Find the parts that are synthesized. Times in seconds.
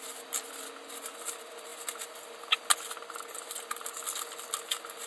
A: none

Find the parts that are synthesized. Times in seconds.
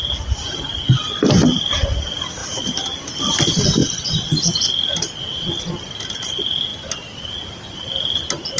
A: 3.8-4.5 (vocoder, BigVGAN v2); 6.7-7.3